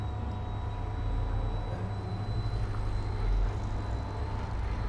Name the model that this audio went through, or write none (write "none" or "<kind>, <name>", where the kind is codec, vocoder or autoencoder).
none